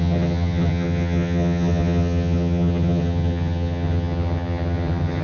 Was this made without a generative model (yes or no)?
no